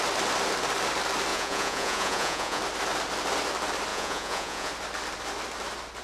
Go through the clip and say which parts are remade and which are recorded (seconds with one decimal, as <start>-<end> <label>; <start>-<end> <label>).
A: 0.0-1.3 recorded; 1.3-2.6 remade; 2.6-3.9 recorded; 3.9-4.7 remade; 4.7-6.0 recorded